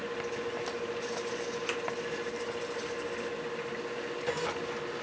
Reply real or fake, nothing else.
real